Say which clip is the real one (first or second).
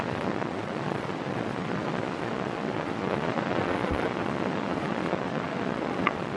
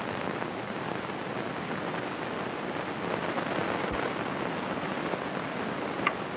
second